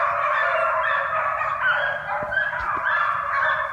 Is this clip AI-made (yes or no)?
no